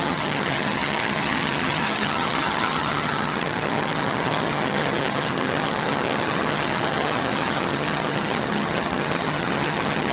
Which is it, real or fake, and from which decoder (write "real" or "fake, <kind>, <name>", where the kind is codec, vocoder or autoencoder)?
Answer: fake, vocoder, HiFi-GAN